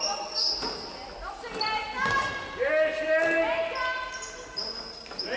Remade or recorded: recorded